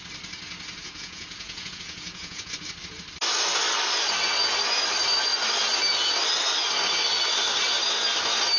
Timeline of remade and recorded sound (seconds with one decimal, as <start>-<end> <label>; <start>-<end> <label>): 0.0-0.8 recorded; 0.8-2.5 remade; 2.5-8.6 recorded